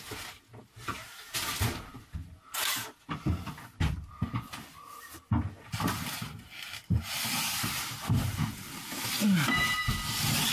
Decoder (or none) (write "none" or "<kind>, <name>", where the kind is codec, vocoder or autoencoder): none